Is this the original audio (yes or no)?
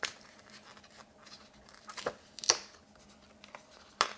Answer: yes